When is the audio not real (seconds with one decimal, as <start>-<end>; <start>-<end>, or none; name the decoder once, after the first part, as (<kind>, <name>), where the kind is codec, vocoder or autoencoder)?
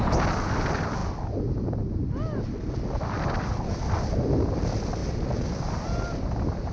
none